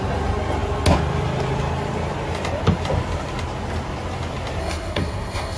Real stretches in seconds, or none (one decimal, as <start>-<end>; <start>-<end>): 0.0-4.6